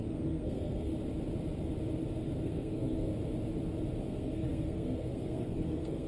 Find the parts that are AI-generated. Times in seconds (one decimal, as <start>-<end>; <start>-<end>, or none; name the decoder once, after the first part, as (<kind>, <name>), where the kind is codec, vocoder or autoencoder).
0.0-0.9 (codec, SNAC); 2.4-3.1; 4.0-6.1